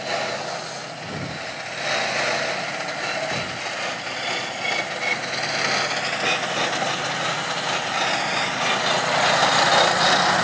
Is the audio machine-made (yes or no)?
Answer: no